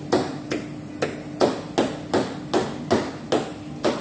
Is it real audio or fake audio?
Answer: real